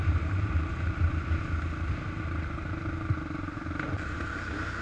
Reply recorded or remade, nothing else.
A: recorded